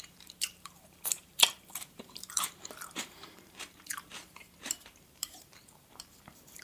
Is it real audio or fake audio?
fake